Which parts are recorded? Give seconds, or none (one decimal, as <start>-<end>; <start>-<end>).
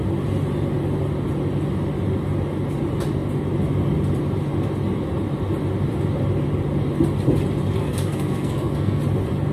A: 0.0-7.8; 9.0-9.5